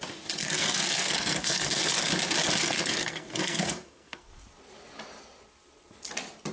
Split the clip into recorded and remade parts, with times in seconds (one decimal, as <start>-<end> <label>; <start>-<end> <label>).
0.0-0.4 recorded; 0.4-1.8 remade; 1.8-2.6 recorded; 2.6-4.3 remade; 4.3-6.5 recorded

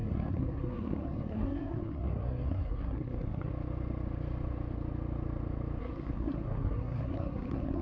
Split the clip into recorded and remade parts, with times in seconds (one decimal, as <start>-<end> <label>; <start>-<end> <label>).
0.0-3.5 remade; 3.5-5.8 recorded; 5.8-7.8 remade

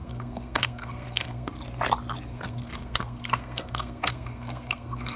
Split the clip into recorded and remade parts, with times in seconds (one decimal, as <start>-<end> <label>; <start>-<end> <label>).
0.0-1.5 remade; 1.5-2.3 recorded; 2.3-5.2 remade

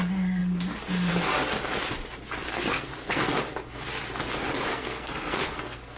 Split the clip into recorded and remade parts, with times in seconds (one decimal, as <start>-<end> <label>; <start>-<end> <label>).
0.0-2.5 recorded; 2.5-3.3 remade; 3.3-4.7 recorded; 4.7-6.0 remade

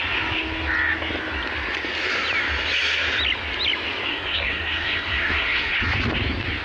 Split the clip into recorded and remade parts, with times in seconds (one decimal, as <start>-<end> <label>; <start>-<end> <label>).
0.0-4.1 recorded; 4.1-5.8 remade; 5.8-6.6 recorded

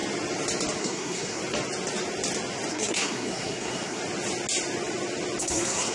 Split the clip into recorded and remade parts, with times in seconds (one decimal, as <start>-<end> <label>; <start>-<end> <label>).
0.0-0.8 recorded; 0.8-1.4 remade; 1.4-2.7 recorded; 2.7-4.0 remade; 4.0-5.4 recorded; 5.4-5.9 remade

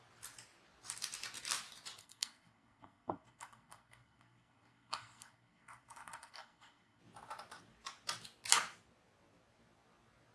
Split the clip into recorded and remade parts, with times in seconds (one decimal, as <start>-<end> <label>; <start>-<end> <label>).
0.0-2.0 recorded; 2.0-7.0 remade; 7.0-10.3 recorded

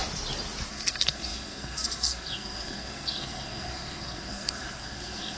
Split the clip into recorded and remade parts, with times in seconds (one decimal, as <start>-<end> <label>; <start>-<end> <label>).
0.0-0.7 recorded; 0.7-5.4 remade